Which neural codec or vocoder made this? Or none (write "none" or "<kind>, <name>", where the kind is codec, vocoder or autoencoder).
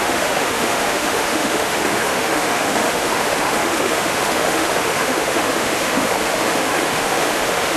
autoencoder, DAC-VAE